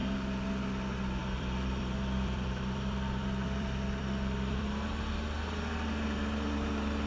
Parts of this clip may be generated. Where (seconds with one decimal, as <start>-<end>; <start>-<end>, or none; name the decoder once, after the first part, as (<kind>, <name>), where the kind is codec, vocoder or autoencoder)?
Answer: 1.2-5.1 (vocoder, BigVGAN v2)